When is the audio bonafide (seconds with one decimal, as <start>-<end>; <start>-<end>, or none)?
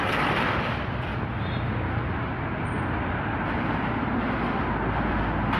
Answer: 0.0-5.6